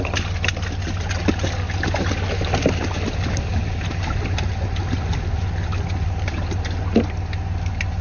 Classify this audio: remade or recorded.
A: recorded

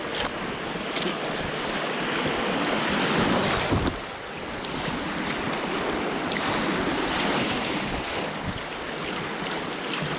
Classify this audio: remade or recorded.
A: recorded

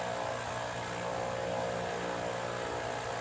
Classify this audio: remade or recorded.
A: recorded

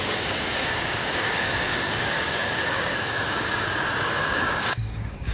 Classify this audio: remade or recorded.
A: remade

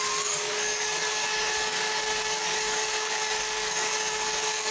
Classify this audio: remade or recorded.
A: remade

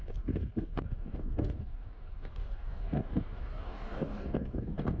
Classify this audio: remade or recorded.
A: remade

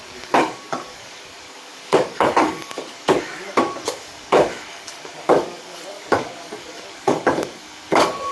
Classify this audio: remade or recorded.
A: remade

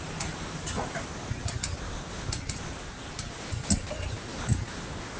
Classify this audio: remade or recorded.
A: recorded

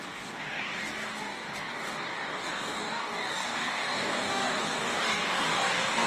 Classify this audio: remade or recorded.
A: remade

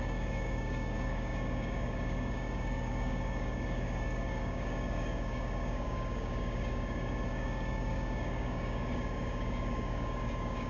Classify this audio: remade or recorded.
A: remade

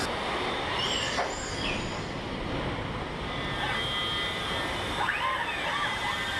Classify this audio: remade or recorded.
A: recorded